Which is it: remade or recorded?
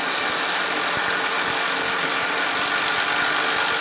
recorded